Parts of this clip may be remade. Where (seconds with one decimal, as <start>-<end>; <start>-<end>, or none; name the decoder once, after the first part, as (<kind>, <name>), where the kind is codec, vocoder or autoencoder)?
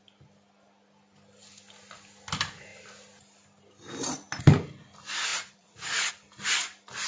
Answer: 5.3-6.1 (vocoder, Vocos)